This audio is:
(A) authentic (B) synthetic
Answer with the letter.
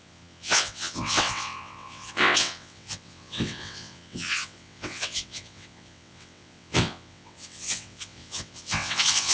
B